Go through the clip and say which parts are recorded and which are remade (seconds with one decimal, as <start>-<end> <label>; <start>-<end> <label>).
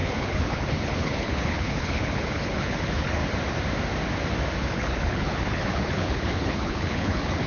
0.0-3.2 remade; 3.2-4.6 recorded; 4.6-7.5 remade